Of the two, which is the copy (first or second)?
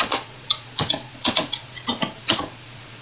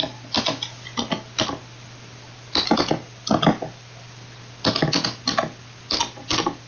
first